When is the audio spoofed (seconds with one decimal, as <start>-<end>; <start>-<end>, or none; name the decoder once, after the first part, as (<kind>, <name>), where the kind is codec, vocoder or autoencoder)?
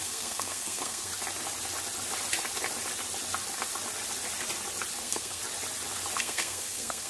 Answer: 0.0-1.1 (codec, SNAC); 5.0-5.4; 6.2-7.1